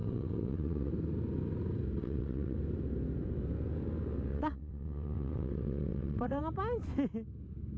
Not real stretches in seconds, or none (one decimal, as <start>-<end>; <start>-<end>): 0.0-0.9; 2.0-2.6; 4.3-6.4